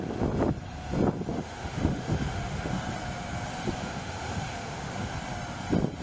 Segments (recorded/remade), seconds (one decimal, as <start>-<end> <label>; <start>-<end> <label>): 0.0-1.3 recorded; 1.3-2.7 remade; 2.7-3.8 recorded; 3.8-5.1 remade; 5.1-6.0 recorded